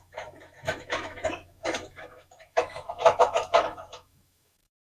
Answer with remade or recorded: remade